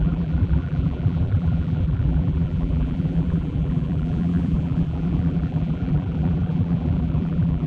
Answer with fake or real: fake